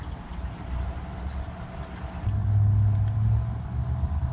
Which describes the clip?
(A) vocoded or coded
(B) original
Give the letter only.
B